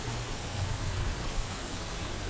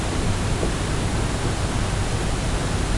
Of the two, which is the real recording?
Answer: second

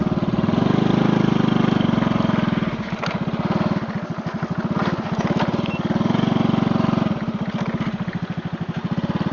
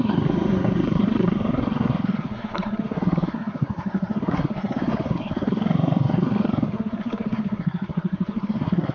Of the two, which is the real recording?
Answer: first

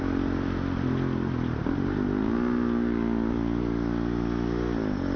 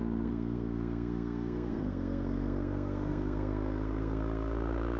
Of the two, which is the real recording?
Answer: first